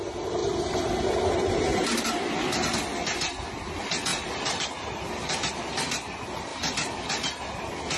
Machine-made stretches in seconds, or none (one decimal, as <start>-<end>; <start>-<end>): 4.1-5.5; 6.5-7.0